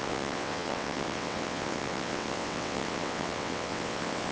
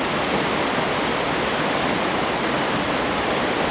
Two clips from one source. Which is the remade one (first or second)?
first